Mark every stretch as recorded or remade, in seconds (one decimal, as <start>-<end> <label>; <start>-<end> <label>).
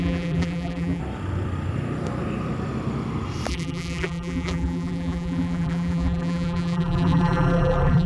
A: 0.0-1.0 remade; 1.0-3.5 recorded; 3.5-8.1 remade